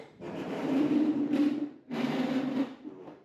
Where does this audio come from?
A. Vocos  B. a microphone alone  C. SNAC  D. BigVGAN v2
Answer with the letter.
D